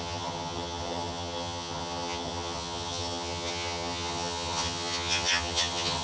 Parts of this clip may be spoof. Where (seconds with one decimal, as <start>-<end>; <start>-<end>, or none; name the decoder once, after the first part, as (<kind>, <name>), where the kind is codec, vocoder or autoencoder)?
0.0-6.0 (vocoder, HiFi-GAN)

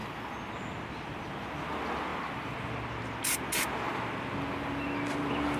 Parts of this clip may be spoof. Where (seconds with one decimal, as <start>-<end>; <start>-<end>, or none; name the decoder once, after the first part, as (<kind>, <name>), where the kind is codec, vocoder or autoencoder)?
none

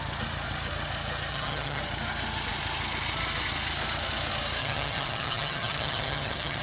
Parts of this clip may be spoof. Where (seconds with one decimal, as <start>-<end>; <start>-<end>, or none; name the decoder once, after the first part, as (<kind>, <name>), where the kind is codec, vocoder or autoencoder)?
1.3-1.8 (vocoder, HiFi-GAN); 4.6-6.6

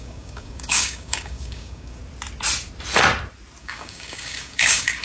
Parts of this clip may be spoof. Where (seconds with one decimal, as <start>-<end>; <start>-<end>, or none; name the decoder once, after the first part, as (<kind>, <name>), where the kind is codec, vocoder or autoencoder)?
0.0-2.0 (codec, DAC); 3.6-5.0

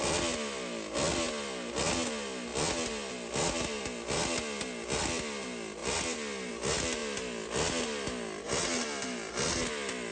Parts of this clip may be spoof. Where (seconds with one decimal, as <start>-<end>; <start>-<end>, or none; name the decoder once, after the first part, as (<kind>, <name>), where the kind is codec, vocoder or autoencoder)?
none